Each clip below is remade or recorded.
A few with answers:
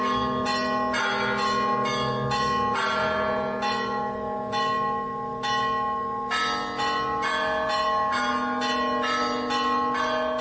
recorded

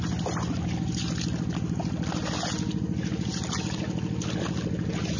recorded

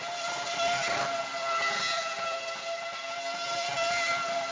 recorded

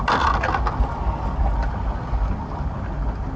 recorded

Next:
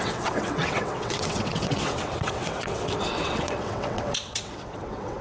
remade